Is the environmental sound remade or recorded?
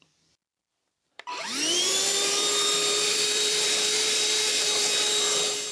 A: remade